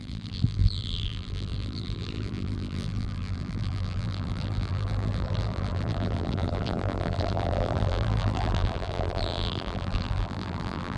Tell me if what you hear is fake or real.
fake